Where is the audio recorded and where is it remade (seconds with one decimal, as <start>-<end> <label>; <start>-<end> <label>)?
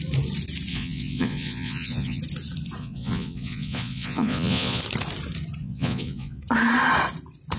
0.0-0.7 recorded; 0.7-2.2 remade; 2.2-2.8 recorded; 2.8-4.8 remade; 4.8-5.6 recorded; 5.6-6.4 remade; 6.4-7.6 recorded